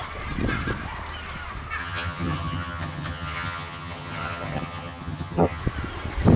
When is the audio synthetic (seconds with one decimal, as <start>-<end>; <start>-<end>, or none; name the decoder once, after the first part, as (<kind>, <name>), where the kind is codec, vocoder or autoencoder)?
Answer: 1.8-5.6 (vocoder, HiFi-GAN)